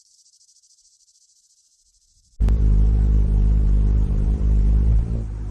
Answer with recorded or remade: remade